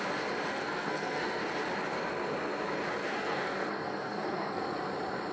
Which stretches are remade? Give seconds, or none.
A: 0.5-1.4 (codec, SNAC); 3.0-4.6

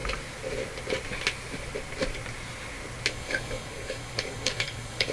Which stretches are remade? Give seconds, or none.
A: 3.1-5.1 (codec, DAC)

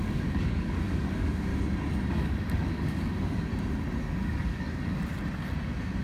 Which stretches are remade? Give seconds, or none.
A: 0.0-1.5 (codec, DAC); 2.1-3.5; 4.0-5.0

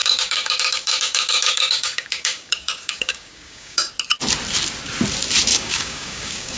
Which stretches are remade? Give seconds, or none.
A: 0.0-3.9 (codec, DAC); 5.5-6.6

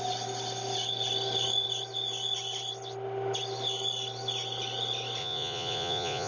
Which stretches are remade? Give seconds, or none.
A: 5.2-6.3 (vocoder, Vocos)

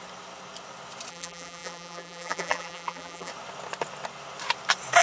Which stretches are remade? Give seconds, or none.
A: 1.1-3.3 (vocoder, BigVGAN v2)

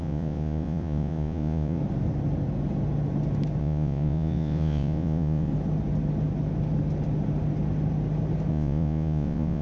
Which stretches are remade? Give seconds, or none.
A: 0.0-1.8 (vocoder, Vocos); 3.6-5.5; 8.5-9.6